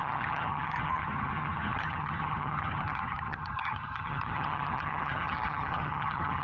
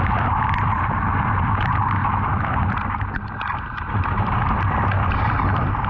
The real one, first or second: second